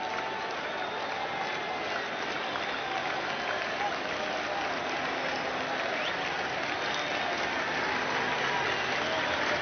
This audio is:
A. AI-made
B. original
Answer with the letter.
B